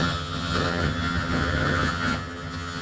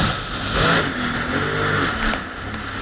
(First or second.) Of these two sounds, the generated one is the first